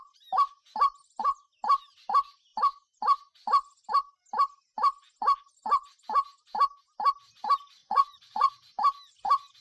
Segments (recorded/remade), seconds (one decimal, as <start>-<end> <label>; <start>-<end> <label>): 0.0-7.8 recorded; 7.8-8.5 remade; 8.5-9.6 recorded